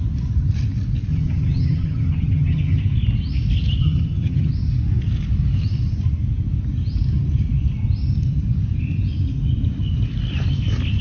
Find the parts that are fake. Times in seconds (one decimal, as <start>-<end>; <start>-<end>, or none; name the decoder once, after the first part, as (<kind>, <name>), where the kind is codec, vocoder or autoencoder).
1.1-2.8 (vocoder, HiFi-GAN); 3.8-4.5